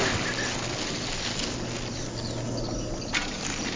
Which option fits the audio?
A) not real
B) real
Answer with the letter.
B